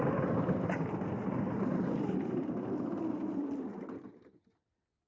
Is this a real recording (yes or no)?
yes